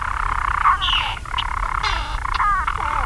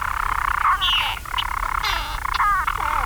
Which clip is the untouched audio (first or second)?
second